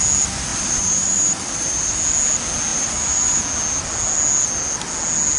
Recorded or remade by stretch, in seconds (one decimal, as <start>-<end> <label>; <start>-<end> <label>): 0.0-0.5 recorded; 0.5-2.0 remade; 2.0-2.7 recorded; 2.7-3.4 remade; 3.4-5.4 recorded